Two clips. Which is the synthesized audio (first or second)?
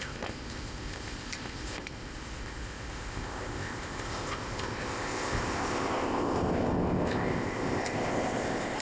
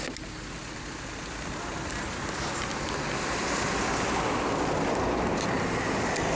first